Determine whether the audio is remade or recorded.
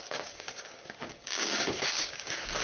remade